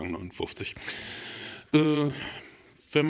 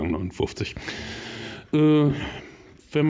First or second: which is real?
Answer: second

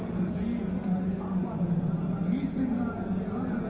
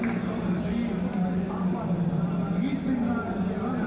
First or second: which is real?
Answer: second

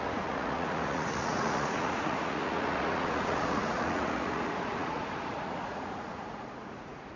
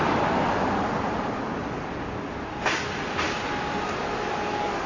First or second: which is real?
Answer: second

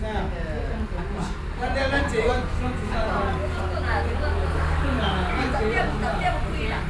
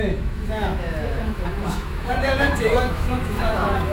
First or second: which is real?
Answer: first